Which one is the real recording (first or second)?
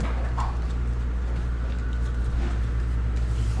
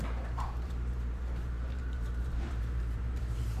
first